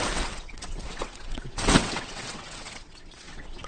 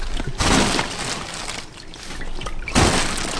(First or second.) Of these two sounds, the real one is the second